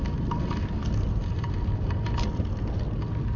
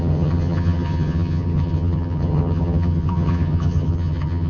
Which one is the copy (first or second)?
second